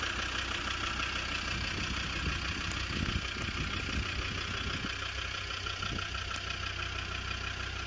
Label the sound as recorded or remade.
recorded